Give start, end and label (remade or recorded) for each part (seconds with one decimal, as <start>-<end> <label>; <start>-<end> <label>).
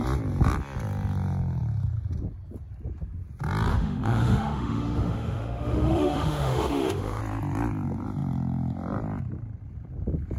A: 0.0-3.7 recorded; 3.7-7.2 remade; 7.2-10.4 recorded